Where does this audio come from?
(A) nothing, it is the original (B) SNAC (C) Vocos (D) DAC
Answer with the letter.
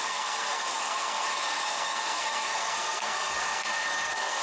B